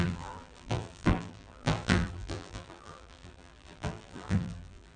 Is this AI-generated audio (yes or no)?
yes